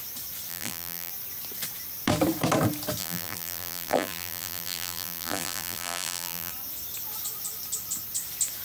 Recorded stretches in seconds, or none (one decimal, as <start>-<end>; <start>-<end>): 0.0-0.5; 1.1-3.0; 6.5-8.6